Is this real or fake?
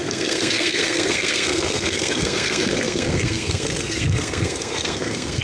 fake